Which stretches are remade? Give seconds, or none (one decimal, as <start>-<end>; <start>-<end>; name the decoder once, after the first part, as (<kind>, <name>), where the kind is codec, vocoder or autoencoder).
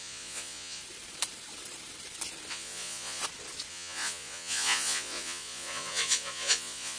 0.0-0.8 (vocoder, Vocos); 2.5-3.2; 3.7-7.0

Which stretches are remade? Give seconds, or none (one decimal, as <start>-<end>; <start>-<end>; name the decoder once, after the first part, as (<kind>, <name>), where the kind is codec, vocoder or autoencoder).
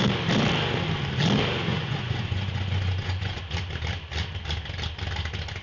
1.7-3.4 (vocoder, Vocos)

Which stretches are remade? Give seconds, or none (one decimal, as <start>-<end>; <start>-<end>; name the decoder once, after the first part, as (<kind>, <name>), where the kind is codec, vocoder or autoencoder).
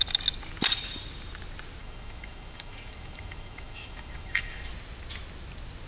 1.8-4.7 (autoencoder, DAC-VAE)